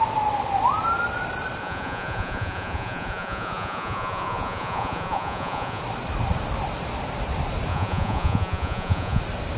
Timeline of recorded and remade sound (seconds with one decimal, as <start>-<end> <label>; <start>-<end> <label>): 0.0-1.6 recorded; 1.6-5.8 remade; 5.8-7.7 recorded; 7.7-9.2 remade; 9.2-9.6 recorded